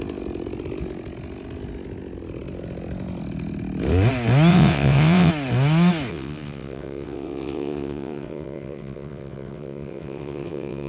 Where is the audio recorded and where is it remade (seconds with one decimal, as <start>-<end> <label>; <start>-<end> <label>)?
0.0-4.5 recorded; 4.5-5.3 remade; 5.3-6.1 recorded; 6.1-10.9 remade